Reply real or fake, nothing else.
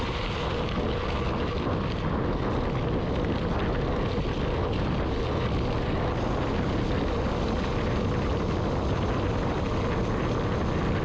real